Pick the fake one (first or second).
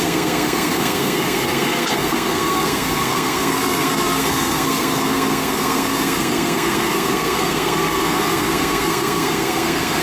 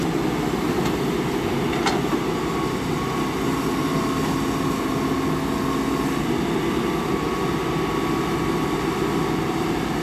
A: first